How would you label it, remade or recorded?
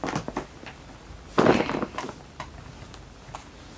recorded